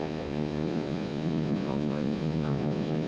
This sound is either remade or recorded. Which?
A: remade